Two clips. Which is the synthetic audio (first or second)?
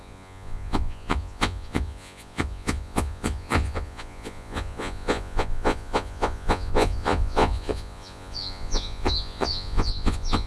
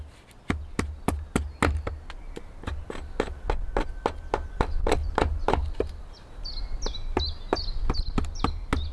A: first